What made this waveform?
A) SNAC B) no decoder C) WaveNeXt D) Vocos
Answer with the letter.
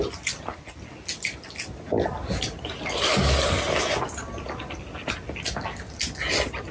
B